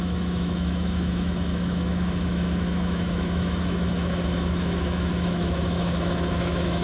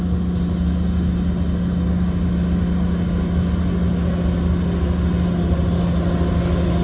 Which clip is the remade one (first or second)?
first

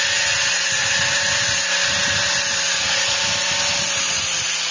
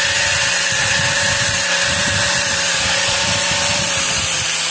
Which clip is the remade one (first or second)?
second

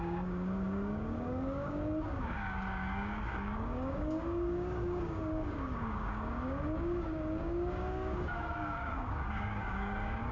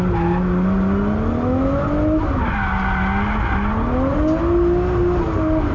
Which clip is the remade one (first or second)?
first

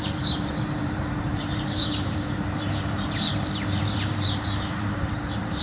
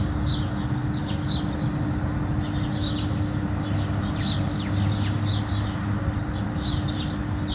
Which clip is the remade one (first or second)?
first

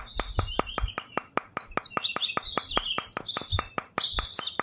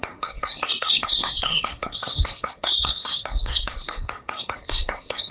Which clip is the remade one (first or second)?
second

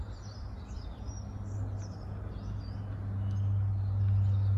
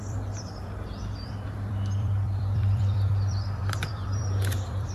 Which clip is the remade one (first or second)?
second